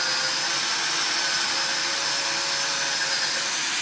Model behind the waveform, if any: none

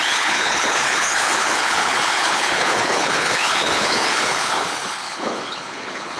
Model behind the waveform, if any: codec, HILCodec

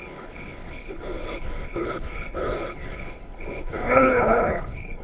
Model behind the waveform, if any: codec, HILCodec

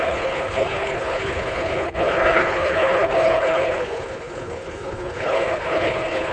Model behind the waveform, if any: codec, HILCodec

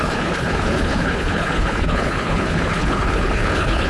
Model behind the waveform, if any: codec, HILCodec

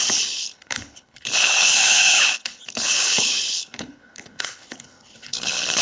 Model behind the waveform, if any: codec, HILCodec